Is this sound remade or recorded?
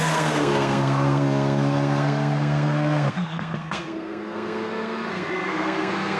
remade